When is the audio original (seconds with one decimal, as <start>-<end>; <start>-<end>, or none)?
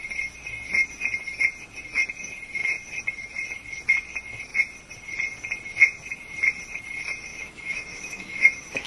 0.0-7.3